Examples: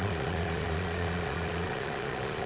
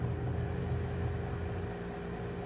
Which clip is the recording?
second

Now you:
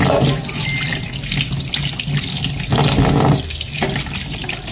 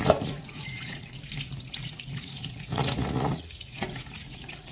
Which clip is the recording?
first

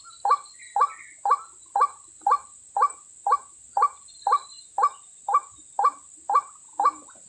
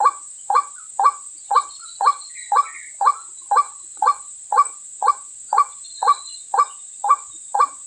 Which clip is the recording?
first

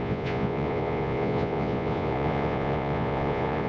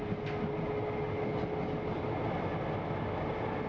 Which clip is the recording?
second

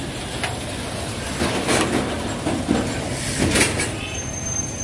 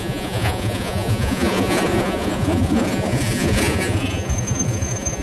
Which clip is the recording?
first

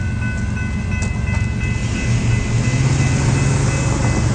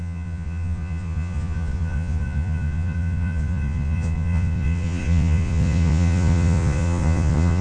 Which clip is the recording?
first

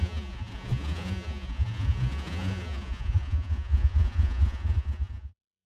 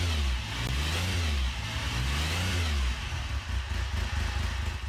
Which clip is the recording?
second